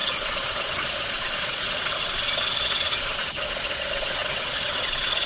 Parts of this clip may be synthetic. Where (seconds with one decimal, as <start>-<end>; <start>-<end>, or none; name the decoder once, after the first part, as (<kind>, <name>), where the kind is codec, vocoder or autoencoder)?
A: 0.0-5.3 (vocoder, Vocos)